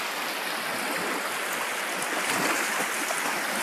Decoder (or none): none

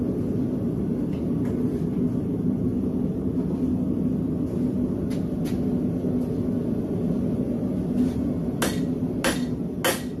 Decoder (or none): none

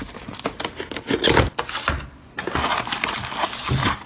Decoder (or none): none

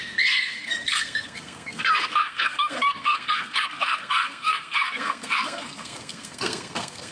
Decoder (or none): codec, SNAC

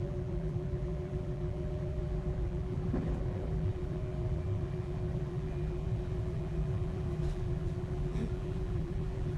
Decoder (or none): vocoder, BigVGAN v2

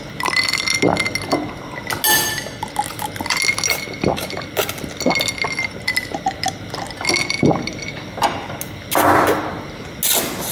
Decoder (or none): none